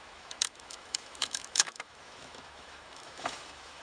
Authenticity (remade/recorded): remade